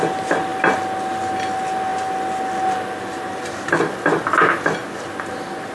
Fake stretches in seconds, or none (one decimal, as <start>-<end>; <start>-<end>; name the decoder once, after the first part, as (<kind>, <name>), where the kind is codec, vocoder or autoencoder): none